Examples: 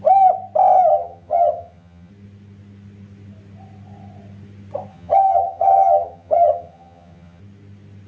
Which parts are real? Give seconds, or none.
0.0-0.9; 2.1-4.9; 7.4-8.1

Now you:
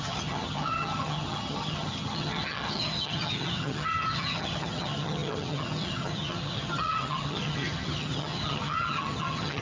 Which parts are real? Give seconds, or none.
none

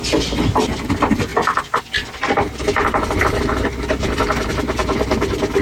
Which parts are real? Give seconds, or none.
0.0-5.6

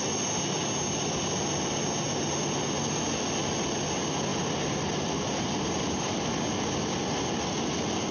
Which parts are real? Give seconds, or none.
0.0-4.3; 6.3-8.1

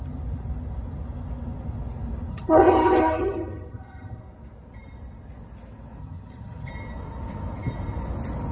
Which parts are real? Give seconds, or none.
0.0-2.3; 4.2-6.0; 6.7-8.5

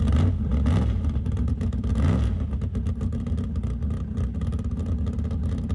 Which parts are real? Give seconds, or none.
0.0-5.7

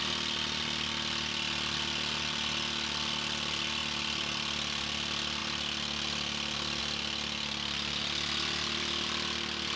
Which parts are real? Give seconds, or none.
0.0-9.8